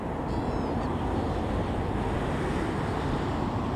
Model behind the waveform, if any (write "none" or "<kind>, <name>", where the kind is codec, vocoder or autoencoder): none